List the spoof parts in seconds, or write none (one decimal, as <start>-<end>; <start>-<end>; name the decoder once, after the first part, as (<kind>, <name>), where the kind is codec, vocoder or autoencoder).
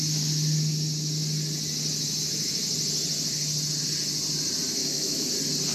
4.8-5.3 (autoencoder, DAC-VAE)